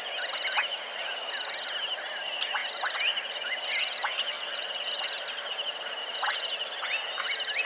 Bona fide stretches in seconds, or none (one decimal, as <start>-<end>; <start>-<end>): 0.0-7.7